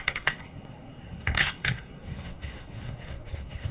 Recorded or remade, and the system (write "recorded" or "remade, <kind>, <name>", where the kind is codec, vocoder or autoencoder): remade, codec, SNAC